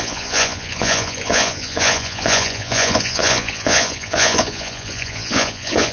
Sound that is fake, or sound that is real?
fake